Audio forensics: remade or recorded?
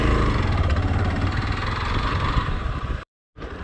remade